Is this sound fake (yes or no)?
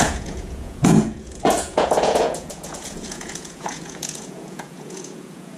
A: yes